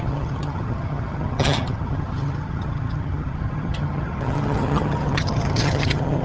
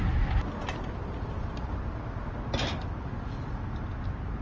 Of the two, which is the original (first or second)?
second